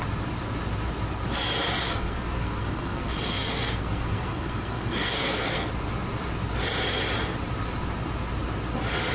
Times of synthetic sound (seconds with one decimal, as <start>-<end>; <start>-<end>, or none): 1.8-5.7